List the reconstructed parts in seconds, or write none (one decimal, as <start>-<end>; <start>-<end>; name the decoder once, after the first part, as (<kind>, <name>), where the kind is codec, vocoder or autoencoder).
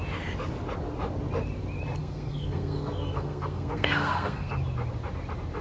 2.0-4.5 (codec, SNAC)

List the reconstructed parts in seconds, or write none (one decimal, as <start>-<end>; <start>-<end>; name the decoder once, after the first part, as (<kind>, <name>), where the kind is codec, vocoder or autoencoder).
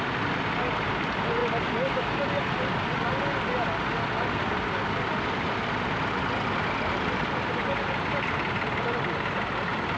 none